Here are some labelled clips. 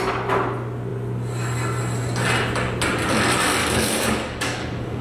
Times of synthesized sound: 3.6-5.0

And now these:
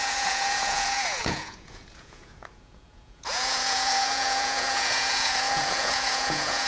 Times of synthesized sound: 0.0-6.7

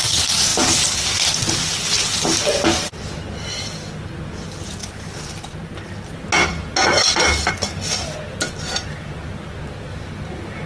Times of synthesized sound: none

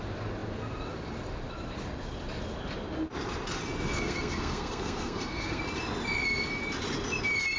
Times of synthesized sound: 3.9-5.6

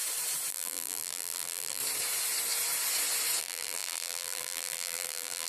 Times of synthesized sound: 0.5-1.8; 3.4-5.5

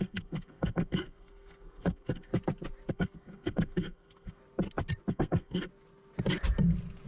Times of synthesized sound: 0.0-2.3; 2.9-4.4; 5.1-5.7